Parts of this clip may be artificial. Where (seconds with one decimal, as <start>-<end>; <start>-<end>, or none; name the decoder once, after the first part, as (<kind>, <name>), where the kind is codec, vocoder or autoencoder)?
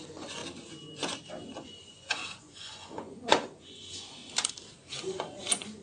0.0-0.4 (vocoder, Vocos); 1.5-4.2; 4.9-5.8